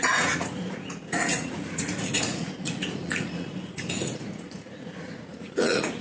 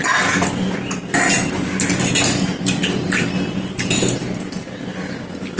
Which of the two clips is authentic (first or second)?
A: second